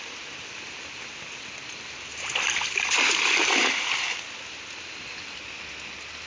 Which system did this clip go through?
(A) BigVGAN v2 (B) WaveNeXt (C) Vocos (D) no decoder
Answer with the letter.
D